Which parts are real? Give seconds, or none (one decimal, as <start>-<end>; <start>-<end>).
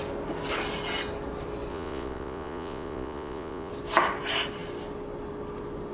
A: 0.0-1.7; 3.7-5.9